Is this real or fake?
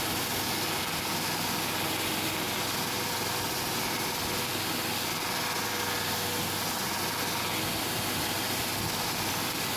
real